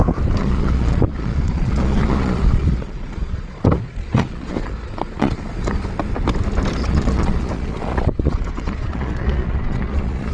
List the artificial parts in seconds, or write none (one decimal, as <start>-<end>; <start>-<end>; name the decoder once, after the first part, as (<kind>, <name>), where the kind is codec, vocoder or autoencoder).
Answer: 0.4-5.4 (vocoder, Vocos); 6.8-10.3